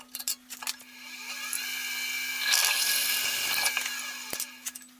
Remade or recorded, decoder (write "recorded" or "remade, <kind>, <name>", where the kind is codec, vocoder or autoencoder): recorded